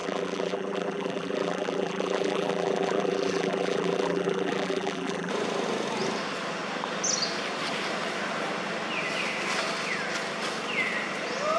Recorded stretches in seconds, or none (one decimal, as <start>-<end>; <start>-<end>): 5.3-11.6